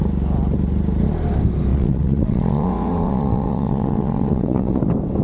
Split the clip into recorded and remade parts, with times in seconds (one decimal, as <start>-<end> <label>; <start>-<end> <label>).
0.0-1.7 recorded; 1.7-4.8 remade; 4.8-5.2 recorded